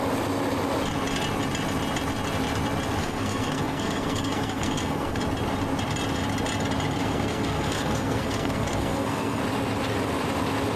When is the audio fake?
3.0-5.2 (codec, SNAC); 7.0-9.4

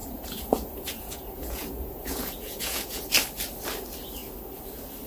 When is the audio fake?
0.0-3.1 (vocoder, Vocos)

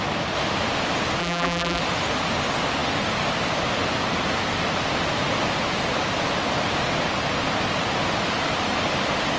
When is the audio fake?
1.2-1.8 (vocoder, BigVGAN v2)